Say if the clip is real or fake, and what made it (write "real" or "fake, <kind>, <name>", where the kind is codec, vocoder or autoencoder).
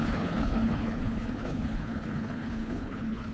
fake, codec, HILCodec